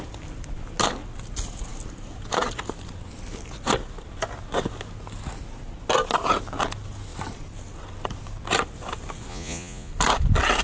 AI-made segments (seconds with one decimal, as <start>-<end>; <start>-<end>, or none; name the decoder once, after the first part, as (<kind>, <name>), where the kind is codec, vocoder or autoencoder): 9.3-9.9 (vocoder, Vocos)